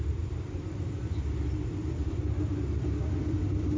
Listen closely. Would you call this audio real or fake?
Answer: fake